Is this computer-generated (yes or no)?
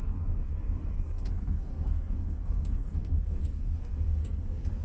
yes